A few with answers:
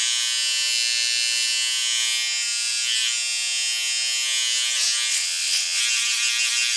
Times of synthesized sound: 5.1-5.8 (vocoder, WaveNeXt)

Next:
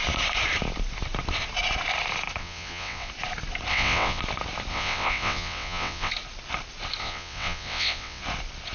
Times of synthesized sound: 2.4-3.1 (vocoder, WaveNeXt); 3.7-4.2; 4.7-6.1; 7.0-8.2

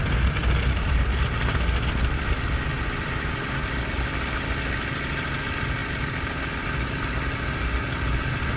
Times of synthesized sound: none

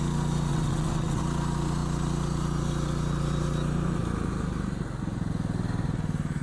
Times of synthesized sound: 0.5-1.2 (vocoder, WaveNeXt)

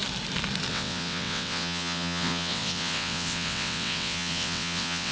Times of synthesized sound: 0.7-5.1 (vocoder, WaveNeXt)